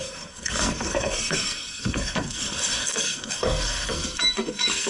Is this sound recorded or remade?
remade